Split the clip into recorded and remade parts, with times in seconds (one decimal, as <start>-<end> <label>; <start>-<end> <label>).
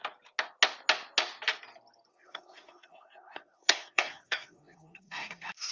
0.0-2.1 recorded; 2.1-5.7 remade